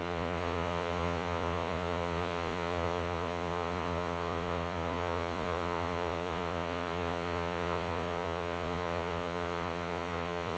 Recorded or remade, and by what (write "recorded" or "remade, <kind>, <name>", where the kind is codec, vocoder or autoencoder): remade, vocoder, Vocos